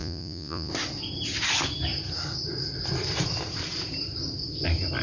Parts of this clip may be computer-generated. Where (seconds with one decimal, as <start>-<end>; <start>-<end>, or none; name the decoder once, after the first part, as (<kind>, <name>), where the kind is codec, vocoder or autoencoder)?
0.0-0.7 (vocoder, Vocos)